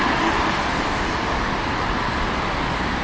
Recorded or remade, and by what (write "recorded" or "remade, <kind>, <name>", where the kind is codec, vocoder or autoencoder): recorded